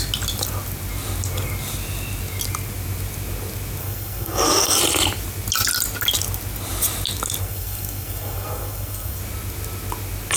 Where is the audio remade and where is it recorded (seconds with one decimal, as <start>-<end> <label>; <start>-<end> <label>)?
0.0-3.8 recorded; 3.8-4.8 remade; 4.8-7.4 recorded; 7.4-9.2 remade; 9.2-10.4 recorded